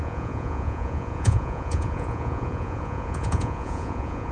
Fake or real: fake